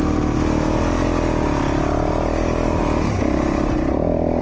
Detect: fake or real real